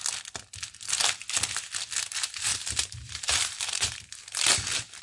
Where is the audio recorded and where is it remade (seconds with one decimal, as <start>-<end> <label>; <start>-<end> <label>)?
0.0-2.5 recorded; 2.5-4.5 remade; 4.5-5.0 recorded

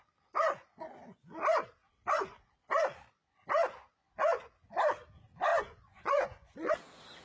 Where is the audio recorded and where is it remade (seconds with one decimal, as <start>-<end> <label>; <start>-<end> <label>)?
0.0-5.5 recorded; 5.5-6.7 remade; 6.7-7.2 recorded

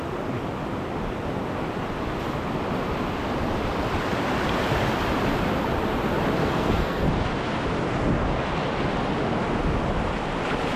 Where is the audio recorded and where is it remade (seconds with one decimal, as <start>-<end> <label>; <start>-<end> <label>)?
0.0-6.4 recorded; 6.4-7.1 remade; 7.1-10.8 recorded

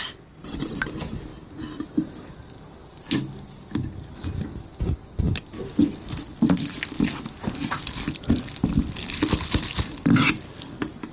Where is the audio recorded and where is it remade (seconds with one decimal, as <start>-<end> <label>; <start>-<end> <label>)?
0.0-11.1 recorded